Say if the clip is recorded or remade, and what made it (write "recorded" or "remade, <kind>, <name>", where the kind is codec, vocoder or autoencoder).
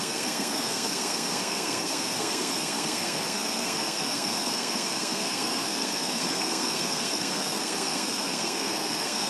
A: remade, codec, SNAC